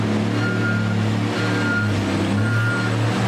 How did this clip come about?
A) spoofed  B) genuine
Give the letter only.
B